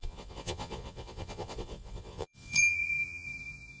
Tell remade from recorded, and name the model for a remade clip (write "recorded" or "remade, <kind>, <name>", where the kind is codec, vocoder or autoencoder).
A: remade, vocoder, Vocos